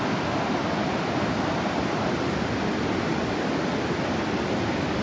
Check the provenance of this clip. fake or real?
real